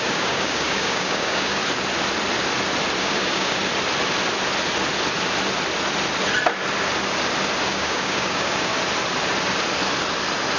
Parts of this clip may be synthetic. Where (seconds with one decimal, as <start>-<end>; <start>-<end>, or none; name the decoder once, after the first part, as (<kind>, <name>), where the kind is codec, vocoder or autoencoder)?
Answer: 0.0-1.6 (codec, DAC); 3.0-3.6; 7.7-8.7